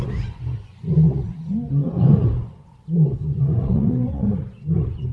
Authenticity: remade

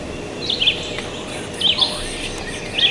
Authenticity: recorded